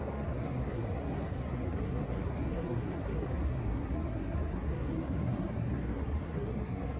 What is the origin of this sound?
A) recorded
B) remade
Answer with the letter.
B